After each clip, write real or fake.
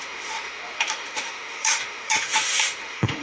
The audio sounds fake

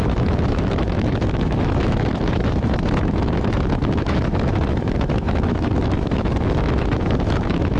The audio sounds fake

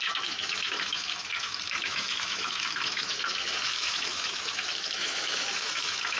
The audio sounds fake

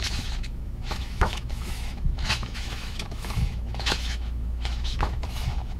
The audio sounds fake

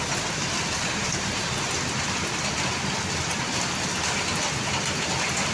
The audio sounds real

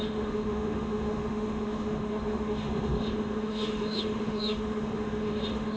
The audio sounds fake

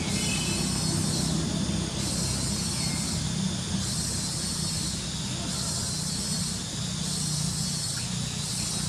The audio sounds real